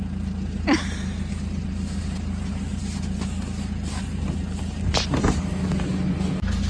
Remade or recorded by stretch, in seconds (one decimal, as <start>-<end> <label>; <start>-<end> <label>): 0.0-6.7 recorded